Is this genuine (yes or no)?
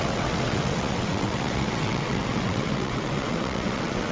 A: no